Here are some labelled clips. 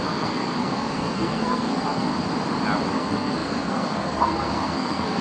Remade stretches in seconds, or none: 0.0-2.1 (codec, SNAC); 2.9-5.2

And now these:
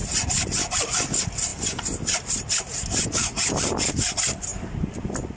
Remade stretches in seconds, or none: none

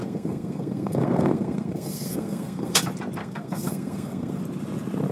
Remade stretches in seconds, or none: 0.0-2.8 (codec, SNAC); 3.2-4.4

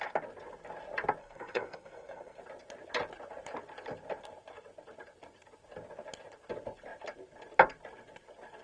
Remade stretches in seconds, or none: 1.2-2.4 (codec, SNAC)

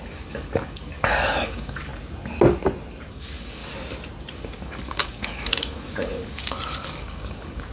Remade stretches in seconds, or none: 0.0-1.9 (codec, DAC); 3.1-3.6; 4.3-7.7

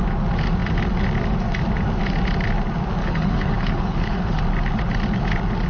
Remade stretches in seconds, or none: 3.0-4.4 (codec, HILCodec)

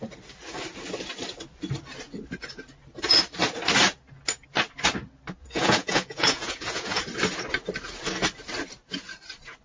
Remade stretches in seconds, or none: 5.4-7.0 (vocoder, Vocos)

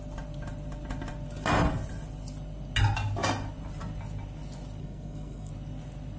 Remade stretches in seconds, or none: 4.8-5.5 (codec, SNAC)